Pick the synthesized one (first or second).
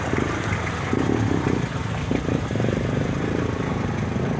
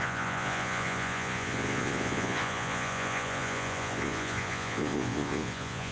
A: second